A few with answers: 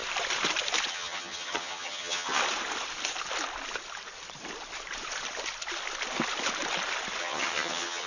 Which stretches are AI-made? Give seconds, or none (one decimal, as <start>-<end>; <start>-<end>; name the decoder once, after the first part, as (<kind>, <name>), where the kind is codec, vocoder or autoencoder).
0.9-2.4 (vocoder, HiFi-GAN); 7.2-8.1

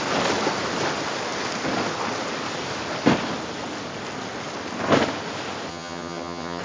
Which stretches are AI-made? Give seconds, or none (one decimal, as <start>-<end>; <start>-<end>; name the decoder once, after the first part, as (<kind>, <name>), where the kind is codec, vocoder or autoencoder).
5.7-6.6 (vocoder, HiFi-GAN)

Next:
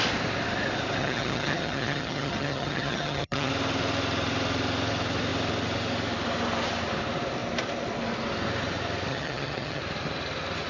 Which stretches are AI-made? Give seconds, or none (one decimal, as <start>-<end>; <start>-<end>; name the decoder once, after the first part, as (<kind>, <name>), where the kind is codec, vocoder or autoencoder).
1.0-3.5 (vocoder, HiFi-GAN); 9.1-9.8